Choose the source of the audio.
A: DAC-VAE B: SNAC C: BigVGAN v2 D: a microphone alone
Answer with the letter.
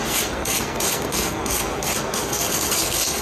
B